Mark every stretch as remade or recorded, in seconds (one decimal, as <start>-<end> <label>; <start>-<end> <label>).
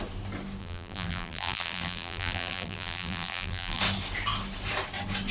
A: 0.0-0.6 recorded; 0.6-3.8 remade; 3.8-5.3 recorded